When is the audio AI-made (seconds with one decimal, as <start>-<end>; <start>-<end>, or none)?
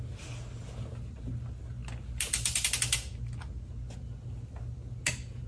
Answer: none